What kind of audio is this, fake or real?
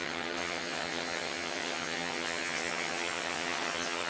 fake